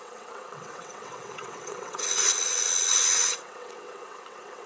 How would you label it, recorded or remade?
remade